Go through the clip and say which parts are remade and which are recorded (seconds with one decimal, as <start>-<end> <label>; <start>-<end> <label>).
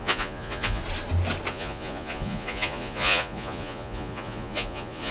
0.0-0.8 remade; 0.8-1.5 recorded; 1.5-5.1 remade